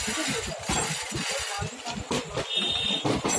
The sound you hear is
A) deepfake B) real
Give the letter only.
B